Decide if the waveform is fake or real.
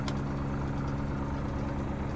real